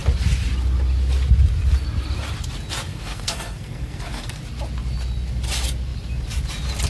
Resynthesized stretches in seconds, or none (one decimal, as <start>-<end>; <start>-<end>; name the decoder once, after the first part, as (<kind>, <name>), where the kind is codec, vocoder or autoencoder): 2.9-4.4 (codec, SNAC)